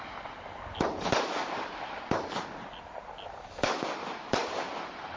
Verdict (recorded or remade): recorded